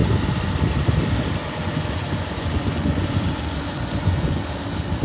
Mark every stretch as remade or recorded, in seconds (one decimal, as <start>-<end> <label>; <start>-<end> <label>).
0.0-1.4 recorded; 1.4-4.4 remade; 4.4-5.0 recorded